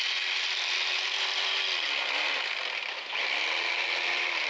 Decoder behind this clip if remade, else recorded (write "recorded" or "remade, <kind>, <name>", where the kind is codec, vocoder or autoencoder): recorded